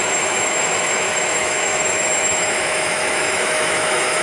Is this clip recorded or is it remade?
remade